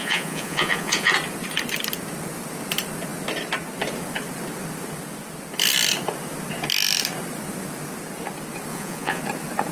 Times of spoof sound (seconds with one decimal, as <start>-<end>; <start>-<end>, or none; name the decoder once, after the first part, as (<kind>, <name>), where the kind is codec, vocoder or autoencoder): 0.0-1.1 (vocoder, Vocos); 8.7-9.2